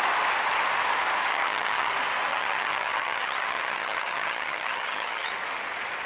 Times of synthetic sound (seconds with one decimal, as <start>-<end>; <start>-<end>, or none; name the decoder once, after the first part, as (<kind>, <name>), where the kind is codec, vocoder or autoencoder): 1.3-1.9 (vocoder, HiFi-GAN); 2.3-5.3